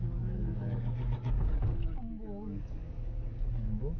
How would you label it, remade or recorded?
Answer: remade